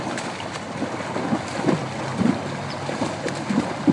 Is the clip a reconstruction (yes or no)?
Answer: no